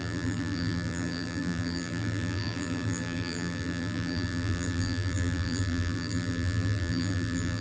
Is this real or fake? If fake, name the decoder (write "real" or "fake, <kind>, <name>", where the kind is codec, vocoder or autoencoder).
fake, vocoder, BigVGAN v2